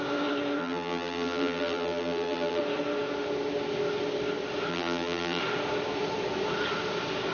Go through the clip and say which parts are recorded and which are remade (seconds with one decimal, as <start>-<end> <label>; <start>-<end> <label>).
0.0-0.6 recorded; 0.6-2.6 remade; 2.6-4.7 recorded; 4.7-5.4 remade; 5.4-7.3 recorded